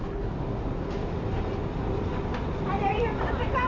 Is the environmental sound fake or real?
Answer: real